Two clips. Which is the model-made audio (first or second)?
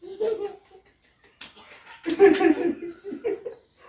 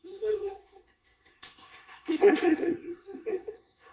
second